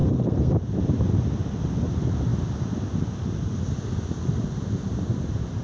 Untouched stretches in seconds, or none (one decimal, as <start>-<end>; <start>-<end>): 0.5-5.6

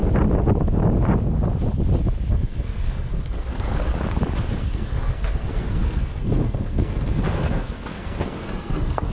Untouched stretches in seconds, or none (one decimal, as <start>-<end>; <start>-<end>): 0.0-2.3; 3.9-4.5

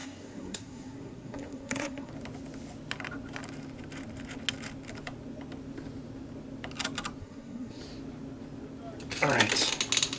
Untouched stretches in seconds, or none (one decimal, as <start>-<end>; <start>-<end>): 2.1-7.2; 7.8-10.2

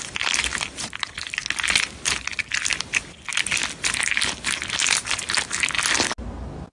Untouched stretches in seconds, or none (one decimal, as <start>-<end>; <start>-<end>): 0.0-6.7